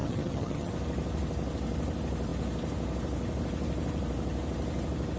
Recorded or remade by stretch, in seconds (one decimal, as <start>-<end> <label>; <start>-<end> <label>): 0.0-0.7 remade; 0.7-5.2 recorded